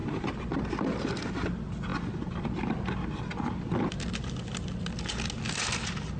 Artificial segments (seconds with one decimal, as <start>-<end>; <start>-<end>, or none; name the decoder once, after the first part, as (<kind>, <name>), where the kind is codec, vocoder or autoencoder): none